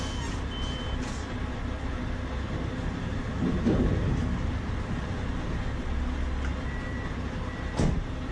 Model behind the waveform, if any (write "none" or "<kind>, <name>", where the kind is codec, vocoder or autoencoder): none